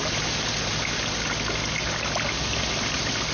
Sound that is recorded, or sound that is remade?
recorded